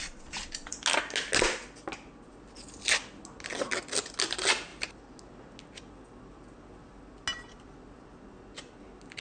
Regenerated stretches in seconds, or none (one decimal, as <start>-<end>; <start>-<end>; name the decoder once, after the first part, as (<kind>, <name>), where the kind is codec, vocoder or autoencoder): none